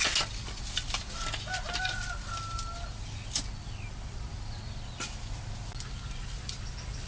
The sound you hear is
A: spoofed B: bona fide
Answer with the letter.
B